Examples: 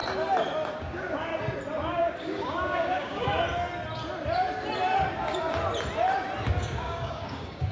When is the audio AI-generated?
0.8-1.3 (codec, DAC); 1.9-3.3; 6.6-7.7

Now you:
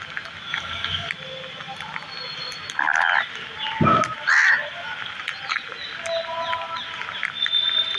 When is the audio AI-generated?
0.5-1.1 (codec, DAC)